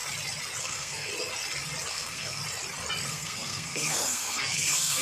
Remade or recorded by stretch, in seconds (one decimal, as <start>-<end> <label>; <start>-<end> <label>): 0.0-0.6 recorded; 0.6-1.1 remade; 1.1-1.9 recorded; 1.9-2.4 remade; 2.4-3.1 recorded; 3.1-5.0 remade